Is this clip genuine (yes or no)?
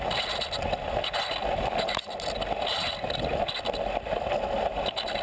yes